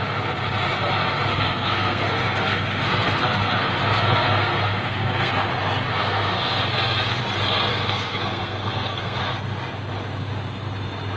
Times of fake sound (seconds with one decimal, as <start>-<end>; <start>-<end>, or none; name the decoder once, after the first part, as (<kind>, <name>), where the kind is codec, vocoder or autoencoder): 1.3-5.3 (codec, SNAC); 5.9-7.2; 7.7-9.2